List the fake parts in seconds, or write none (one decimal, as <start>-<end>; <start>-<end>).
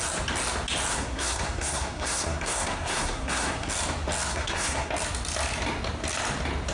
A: 0.9-3.7; 4.3-4.9